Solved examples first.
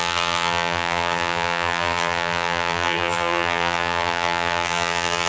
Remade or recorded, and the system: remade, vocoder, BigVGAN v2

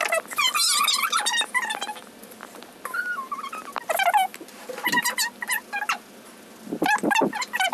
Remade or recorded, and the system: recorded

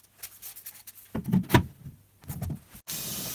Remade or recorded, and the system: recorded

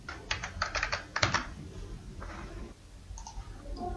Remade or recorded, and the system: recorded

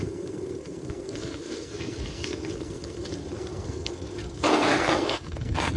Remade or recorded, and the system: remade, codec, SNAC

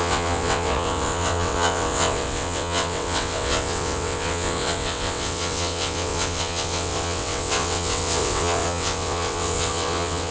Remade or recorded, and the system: remade, vocoder, WaveNeXt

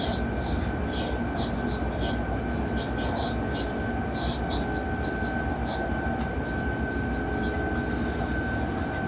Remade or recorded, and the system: recorded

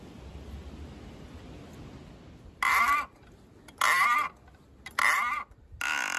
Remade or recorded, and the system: recorded